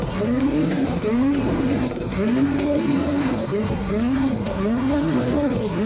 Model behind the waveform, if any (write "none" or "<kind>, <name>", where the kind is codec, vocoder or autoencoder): codec, SNAC